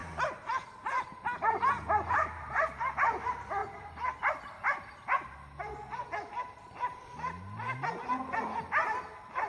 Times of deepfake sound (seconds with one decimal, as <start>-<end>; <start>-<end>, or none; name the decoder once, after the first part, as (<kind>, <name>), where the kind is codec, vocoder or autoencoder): 0.0-1.2 (vocoder, BigVGAN v2); 3.6-4.3